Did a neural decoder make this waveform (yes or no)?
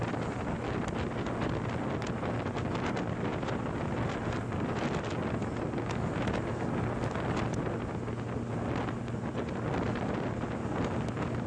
no